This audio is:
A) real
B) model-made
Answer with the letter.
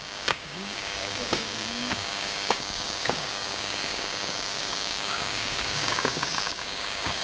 B